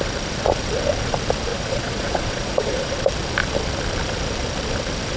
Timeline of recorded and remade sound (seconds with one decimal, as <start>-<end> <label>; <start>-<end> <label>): 0.0-1.5 recorded; 1.5-2.9 remade; 2.9-5.2 recorded